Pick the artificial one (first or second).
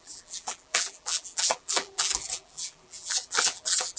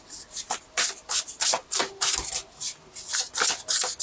first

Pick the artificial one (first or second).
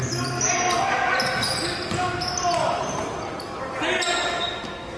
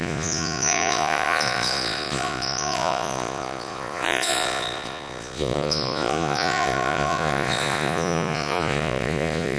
second